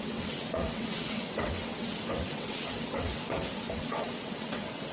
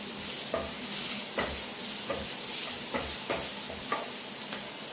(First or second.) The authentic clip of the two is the second